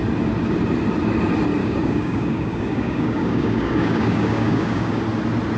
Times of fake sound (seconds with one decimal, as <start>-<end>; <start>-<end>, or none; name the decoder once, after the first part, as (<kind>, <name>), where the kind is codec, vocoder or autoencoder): 1.6-5.0 (codec, DAC)

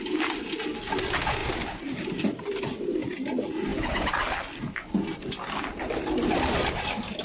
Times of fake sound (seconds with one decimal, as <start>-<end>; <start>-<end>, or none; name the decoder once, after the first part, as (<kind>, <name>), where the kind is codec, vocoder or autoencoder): none

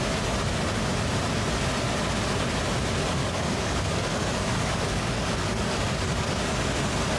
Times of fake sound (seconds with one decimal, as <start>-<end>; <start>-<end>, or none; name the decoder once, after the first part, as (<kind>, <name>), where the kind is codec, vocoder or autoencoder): 3.2-6.4 (codec, DAC)